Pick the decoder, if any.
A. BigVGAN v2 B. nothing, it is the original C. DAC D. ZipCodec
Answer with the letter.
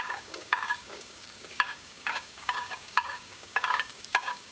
C